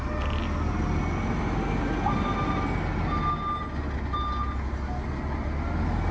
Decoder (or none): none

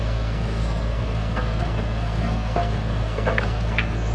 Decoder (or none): codec, SNAC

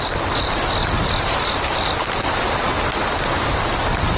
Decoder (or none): none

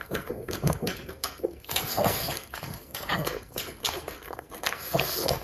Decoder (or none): codec, SNAC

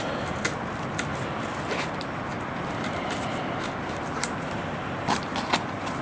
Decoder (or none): none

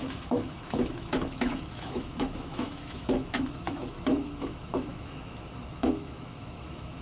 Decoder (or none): autoencoder, DAC-VAE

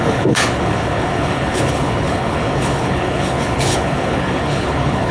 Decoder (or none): codec, HILCodec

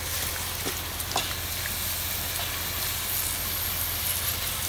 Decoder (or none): none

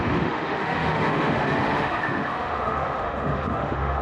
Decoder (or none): autoencoder, DAC-VAE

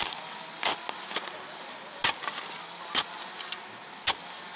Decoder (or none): none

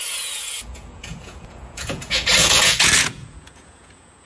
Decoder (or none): vocoder, Vocos